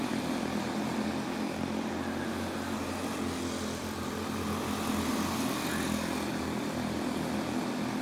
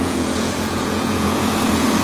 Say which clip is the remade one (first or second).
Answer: second